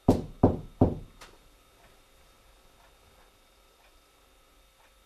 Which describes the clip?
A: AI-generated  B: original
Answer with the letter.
B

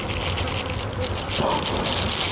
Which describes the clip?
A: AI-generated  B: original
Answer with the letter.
B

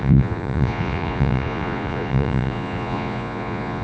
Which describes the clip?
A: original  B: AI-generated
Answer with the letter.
B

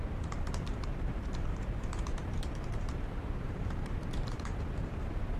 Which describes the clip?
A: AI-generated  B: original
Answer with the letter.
A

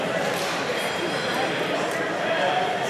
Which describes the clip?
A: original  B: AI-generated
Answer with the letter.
B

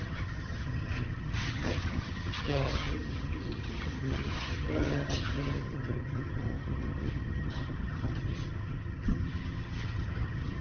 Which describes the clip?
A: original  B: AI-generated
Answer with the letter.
B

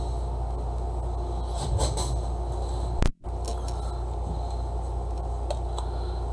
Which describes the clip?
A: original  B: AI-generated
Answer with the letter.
A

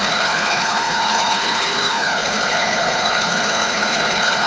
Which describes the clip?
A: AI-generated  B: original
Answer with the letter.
A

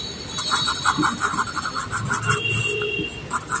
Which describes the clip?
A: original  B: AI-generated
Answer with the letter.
A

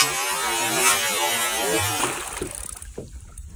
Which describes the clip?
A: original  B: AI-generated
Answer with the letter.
A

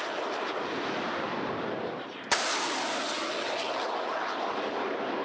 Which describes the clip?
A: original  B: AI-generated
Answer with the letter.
A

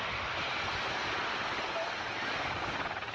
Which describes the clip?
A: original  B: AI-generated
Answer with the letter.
A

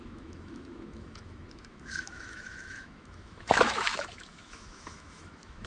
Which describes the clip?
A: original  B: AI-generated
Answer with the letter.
B